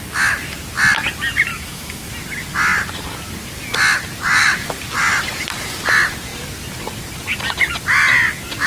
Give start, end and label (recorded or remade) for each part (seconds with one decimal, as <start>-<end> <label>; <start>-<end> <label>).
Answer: 0.0-1.5 recorded; 1.5-2.1 remade; 2.1-8.7 recorded